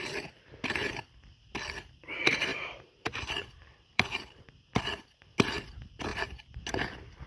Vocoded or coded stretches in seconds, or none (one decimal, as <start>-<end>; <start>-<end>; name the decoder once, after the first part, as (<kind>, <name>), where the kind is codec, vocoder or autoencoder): 2.5-4.5 (vocoder, BigVGAN v2)